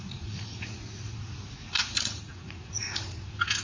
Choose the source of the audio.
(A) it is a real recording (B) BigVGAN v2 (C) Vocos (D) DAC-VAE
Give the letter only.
C